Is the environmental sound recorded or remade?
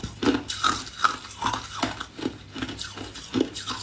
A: recorded